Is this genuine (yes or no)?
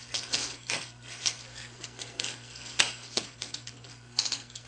no